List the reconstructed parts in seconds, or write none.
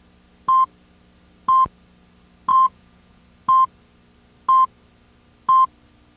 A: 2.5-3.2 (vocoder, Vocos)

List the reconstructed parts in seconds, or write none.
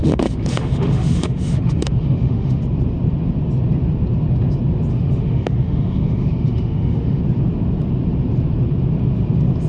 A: 0.0-2.6 (autoencoder, DAC-VAE); 4.9-7.2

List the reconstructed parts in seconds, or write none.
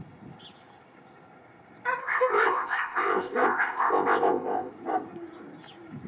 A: 2.0-4.7 (codec, ZipCodec)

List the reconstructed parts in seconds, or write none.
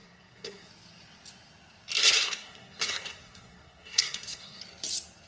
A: 0.0-0.7 (codec, SNAC); 2.0-4.6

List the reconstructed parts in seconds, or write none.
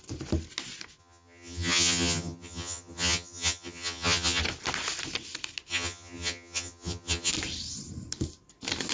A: 1.0-4.4 (vocoder, HiFi-GAN); 5.7-7.3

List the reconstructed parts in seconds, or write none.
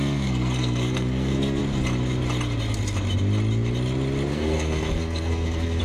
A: 0.0-1.6 (codec, SNAC); 4.3-5.8